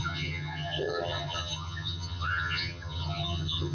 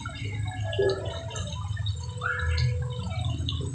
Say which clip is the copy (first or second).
first